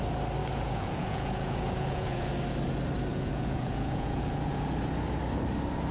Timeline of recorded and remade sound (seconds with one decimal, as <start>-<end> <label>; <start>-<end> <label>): 0.0-0.4 recorded; 0.4-2.3 remade; 2.3-3.1 recorded; 3.1-4.7 remade; 4.7-5.9 recorded